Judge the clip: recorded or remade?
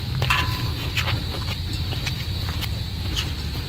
recorded